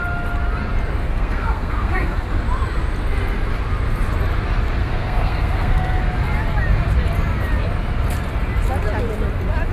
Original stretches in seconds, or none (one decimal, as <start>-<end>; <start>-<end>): 0.0-1.0; 2.3-4.8; 6.0-9.7